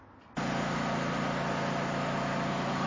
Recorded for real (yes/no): yes